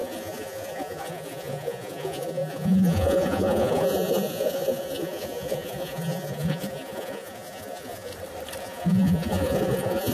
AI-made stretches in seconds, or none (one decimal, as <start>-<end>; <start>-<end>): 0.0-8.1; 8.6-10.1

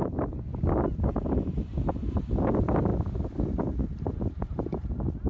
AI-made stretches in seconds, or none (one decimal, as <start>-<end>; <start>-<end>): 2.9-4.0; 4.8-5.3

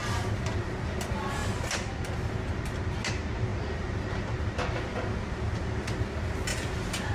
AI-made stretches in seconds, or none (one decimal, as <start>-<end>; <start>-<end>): 6.5-7.1

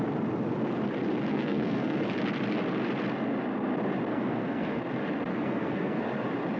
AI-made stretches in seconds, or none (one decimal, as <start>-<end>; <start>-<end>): 1.3-2.0; 4.1-4.8; 5.3-6.0

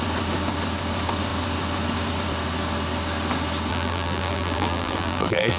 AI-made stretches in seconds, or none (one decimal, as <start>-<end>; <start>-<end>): 3.7-5.6